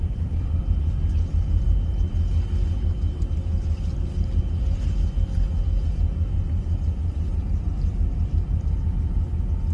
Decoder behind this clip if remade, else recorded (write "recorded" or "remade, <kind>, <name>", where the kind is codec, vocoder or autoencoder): recorded